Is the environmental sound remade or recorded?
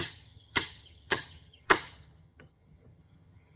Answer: remade